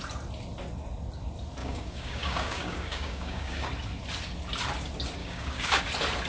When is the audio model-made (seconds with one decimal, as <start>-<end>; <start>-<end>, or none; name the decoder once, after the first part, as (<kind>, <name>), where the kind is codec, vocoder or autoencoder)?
1.6-3.7 (codec, DAC); 5.2-5.8